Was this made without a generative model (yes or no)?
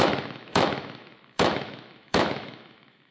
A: no